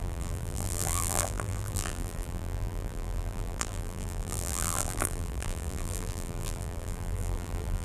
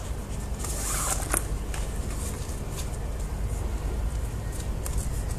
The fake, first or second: first